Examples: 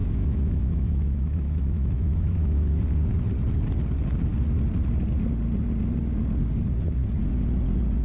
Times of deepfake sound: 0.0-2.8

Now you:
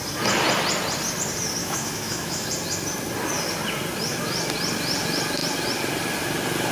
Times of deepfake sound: 1.6-2.5